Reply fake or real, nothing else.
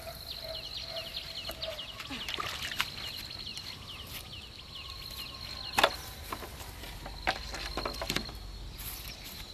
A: real